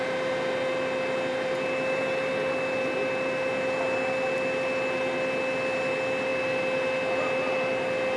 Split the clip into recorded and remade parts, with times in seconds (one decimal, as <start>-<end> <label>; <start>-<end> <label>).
0.0-8.2 recorded